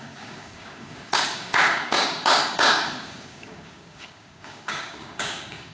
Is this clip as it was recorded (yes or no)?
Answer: no